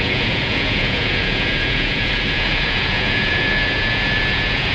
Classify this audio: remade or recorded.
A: remade